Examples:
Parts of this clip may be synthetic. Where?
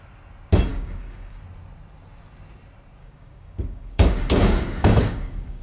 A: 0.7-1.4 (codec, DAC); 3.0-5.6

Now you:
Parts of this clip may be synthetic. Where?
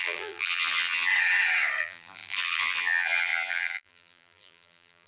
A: 0.0-1.1 (vocoder, BigVGAN v2); 1.8-5.1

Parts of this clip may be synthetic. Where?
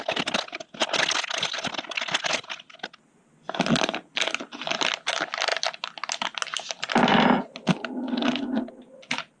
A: none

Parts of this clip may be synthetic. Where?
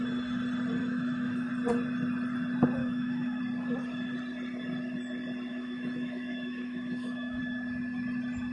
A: 0.8-1.5 (autoencoder, DAC-VAE); 2.8-3.4; 5.5-7.4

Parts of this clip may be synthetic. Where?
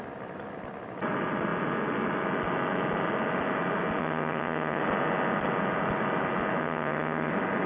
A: 4.0-4.8 (vocoder, HiFi-GAN); 6.6-7.3